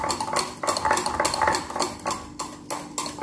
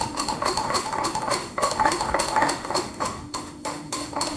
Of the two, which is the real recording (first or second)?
first